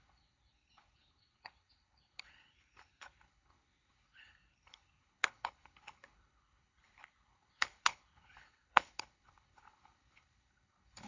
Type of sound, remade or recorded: remade